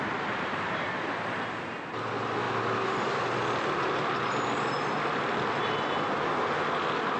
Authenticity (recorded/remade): recorded